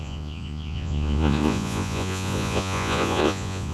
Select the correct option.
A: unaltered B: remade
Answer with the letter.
B